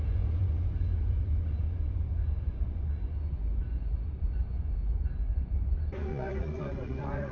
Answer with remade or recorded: remade